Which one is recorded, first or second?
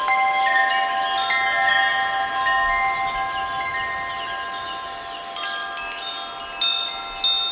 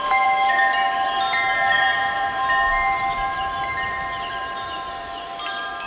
first